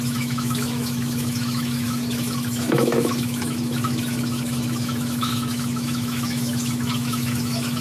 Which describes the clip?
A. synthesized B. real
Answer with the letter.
A